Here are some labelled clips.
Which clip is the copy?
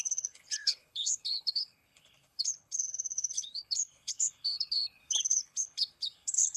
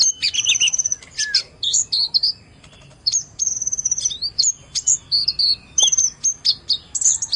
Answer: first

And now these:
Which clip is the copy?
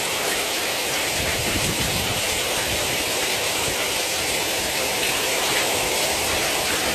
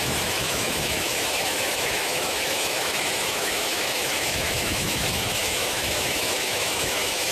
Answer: second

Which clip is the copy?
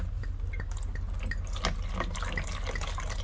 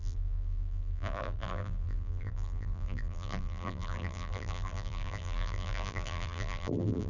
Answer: second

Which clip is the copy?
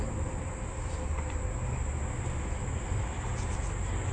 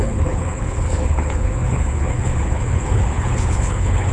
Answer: second